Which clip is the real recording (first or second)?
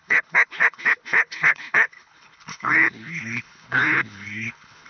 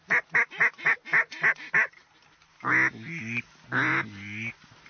second